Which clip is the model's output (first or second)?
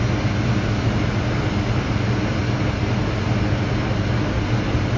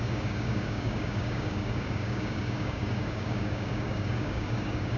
second